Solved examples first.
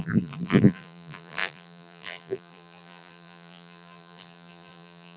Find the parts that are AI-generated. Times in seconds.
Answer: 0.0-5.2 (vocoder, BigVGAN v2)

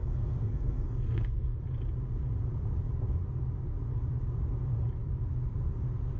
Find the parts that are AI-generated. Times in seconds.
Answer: 0.0-1.6 (codec, SNAC)

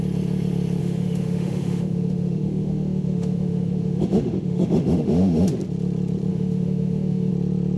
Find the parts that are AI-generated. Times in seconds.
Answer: 0.8-5.5 (autoencoder, DAC-VAE); 6.3-7.3

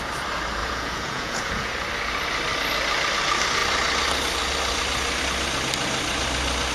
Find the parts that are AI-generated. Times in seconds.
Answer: 0.6-1.7 (vocoder, Vocos)

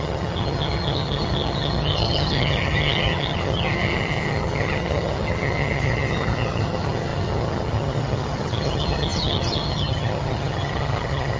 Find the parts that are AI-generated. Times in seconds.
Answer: 0.0-11.4 (vocoder, HiFi-GAN)

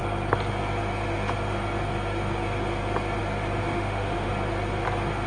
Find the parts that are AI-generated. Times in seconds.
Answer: 3.6-4.3 (autoencoder, DAC-VAE)

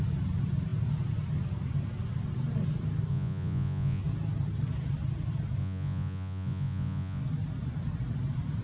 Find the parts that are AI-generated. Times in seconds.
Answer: 3.1-4.0 (vocoder, Vocos); 5.6-7.2

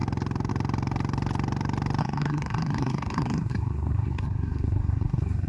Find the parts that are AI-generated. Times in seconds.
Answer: 2.0-5.5 (codec, SNAC)